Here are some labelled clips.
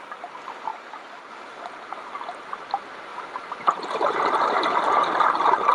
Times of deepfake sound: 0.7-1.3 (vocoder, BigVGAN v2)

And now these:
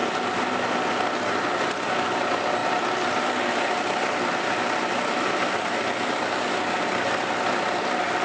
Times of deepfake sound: none

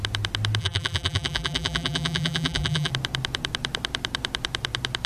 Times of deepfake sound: 0.6-2.9 (vocoder, BigVGAN v2)

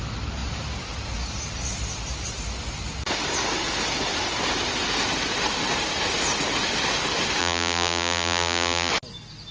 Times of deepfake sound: 7.4-8.9 (vocoder, BigVGAN v2)

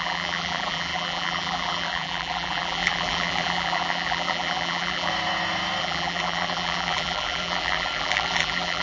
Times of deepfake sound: 0.0-5.1 (vocoder, BigVGAN v2); 5.8-8.8

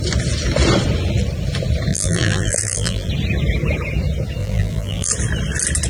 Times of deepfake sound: 1.9-3.1 (vocoder, BigVGAN v2); 4.4-5.1

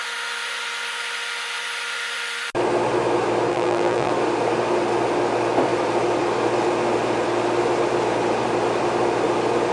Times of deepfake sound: 3.5-4.1 (vocoder, BigVGAN v2)